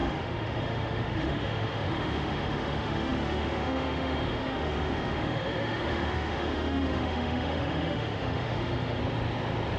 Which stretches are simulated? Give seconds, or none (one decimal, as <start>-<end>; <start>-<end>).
0.0-9.0